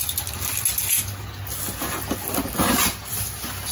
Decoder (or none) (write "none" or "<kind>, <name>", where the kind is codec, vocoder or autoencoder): none